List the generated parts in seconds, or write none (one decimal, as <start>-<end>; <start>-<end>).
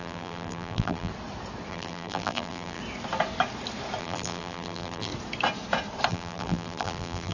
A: 0.0-1.1; 1.7-2.8; 4.0-5.1; 6.1-7.3